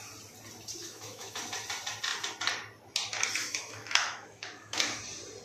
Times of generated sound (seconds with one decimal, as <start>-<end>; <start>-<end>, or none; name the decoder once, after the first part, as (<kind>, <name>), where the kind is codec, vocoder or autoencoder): 0.8-1.4 (autoencoder, DAC-VAE); 3.4-5.0